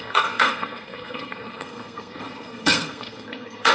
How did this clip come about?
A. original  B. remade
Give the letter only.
B